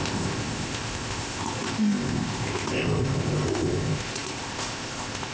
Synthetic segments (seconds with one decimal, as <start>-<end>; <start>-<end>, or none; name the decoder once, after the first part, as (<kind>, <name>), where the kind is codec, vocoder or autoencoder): 0.0-5.3 (codec, ZipCodec)